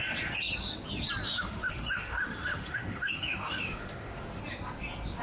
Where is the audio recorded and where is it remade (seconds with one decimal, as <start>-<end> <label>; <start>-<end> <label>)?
0.0-1.3 recorded; 1.3-4.4 remade; 4.4-5.2 recorded